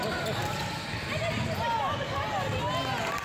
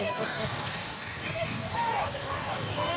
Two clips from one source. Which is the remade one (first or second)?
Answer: second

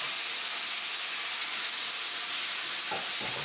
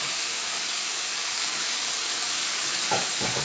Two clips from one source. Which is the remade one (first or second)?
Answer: second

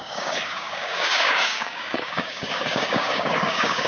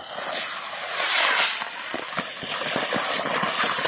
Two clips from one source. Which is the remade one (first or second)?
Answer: first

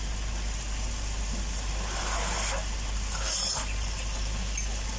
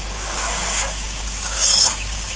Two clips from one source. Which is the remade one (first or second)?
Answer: second